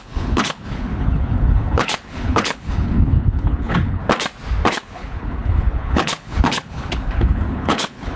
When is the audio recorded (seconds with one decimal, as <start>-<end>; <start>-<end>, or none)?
4.0-4.7